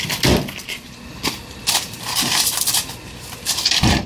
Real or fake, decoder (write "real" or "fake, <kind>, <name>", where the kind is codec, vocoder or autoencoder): fake, vocoder, BigVGAN v2